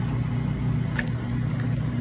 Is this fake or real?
real